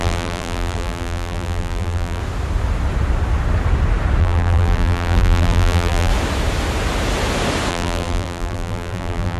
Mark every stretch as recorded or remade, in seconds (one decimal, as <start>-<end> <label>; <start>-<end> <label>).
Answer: 0.0-2.2 remade; 2.2-4.2 recorded; 4.2-6.1 remade; 6.1-7.7 recorded; 7.7-9.4 remade